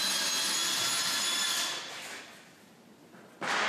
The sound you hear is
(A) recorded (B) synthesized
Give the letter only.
A